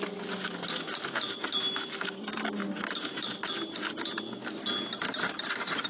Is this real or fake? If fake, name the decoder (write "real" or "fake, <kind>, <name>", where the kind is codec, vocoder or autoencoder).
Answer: real